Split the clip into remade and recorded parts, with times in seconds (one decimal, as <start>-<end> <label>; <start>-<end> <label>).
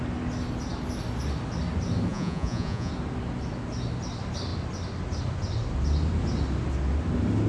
0.0-2.1 recorded; 2.1-2.9 remade; 2.9-7.5 recorded